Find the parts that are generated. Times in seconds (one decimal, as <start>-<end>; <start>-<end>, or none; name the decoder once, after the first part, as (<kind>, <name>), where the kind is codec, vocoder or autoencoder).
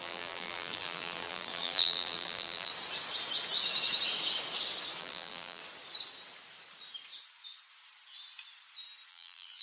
0.0-2.7 (vocoder, BigVGAN v2); 5.0-5.6; 9.1-9.6